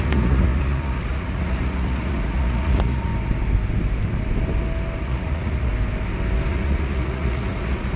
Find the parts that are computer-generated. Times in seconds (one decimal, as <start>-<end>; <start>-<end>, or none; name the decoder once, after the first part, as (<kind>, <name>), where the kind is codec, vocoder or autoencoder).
0.0-3.1 (vocoder, Vocos); 5.0-5.7; 6.5-8.0